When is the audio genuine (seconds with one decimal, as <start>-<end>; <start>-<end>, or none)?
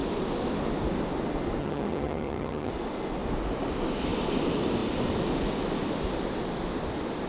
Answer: 0.0-1.6; 2.7-7.3